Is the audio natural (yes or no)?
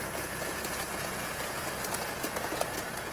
no